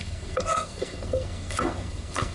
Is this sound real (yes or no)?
no